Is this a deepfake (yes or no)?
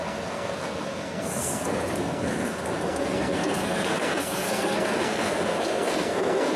yes